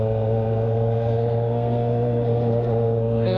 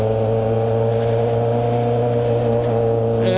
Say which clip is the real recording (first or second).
second